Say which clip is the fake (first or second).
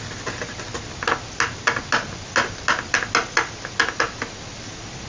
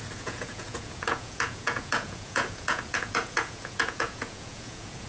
second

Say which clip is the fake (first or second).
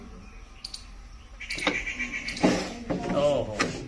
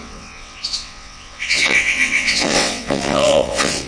second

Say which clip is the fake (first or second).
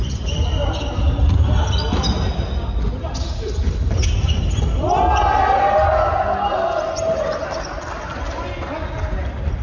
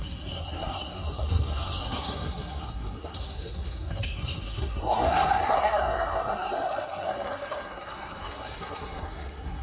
second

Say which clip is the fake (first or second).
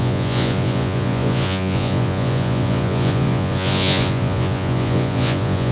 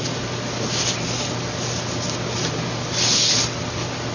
first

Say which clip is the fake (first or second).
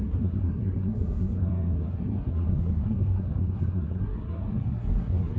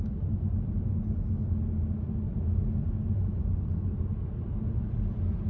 first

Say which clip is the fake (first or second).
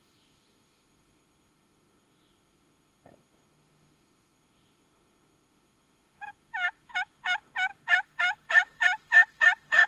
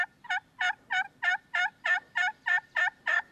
first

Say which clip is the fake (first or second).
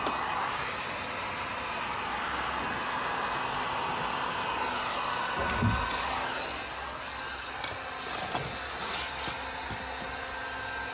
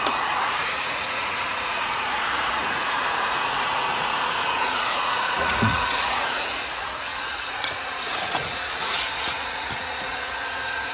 second